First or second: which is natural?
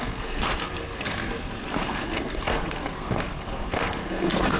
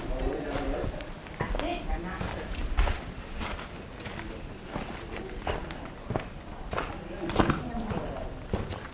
second